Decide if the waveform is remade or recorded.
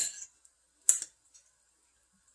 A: recorded